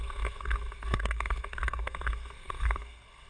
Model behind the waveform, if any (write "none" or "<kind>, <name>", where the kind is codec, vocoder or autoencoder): codec, SNAC